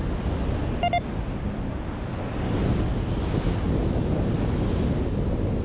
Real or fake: real